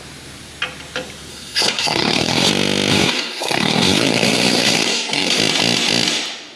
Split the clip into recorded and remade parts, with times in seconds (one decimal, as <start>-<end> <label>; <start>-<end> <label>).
0.0-1.3 recorded; 1.3-2.5 remade; 2.5-2.9 recorded; 2.9-5.4 remade; 5.4-6.6 recorded